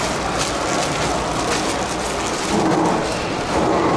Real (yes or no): yes